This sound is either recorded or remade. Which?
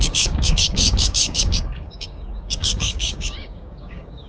remade